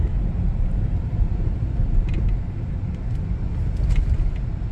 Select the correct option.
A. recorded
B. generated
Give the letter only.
A